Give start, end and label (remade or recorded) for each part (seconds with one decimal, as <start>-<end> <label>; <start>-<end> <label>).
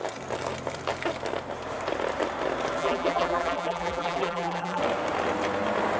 0.0-2.8 recorded; 2.8-4.8 remade; 4.8-6.0 recorded